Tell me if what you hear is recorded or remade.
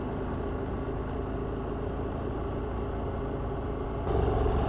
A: recorded